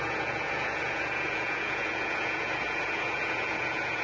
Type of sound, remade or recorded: remade